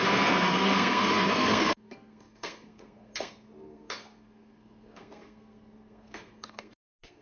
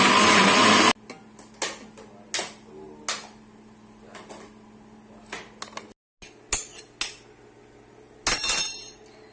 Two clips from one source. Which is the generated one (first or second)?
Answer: first